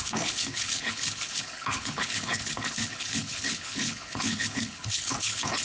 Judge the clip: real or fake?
fake